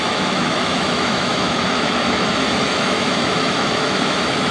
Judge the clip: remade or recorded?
remade